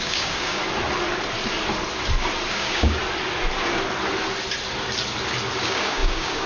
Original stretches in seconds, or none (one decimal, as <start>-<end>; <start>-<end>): 0.6-2.5; 3.0-5.6